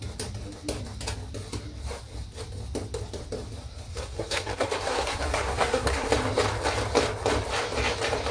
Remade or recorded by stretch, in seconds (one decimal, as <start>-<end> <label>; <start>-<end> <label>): 0.0-3.9 recorded; 3.9-6.1 remade; 6.1-8.3 recorded